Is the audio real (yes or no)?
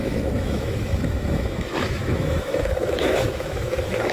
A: no